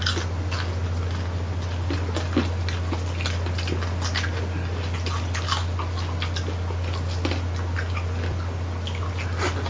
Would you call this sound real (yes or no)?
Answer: yes